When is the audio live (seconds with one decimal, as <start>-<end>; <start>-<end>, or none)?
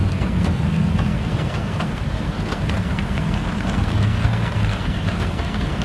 none